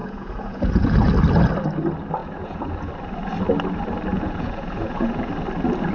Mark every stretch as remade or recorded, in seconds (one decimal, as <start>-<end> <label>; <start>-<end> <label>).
0.0-1.1 remade; 1.1-2.2 recorded; 2.2-2.9 remade; 2.9-4.1 recorded; 4.1-5.3 remade; 5.3-5.9 recorded